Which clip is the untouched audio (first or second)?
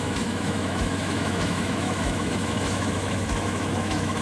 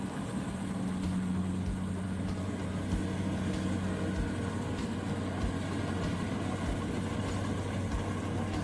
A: second